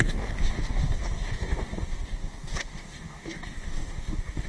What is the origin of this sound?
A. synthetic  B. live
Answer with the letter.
A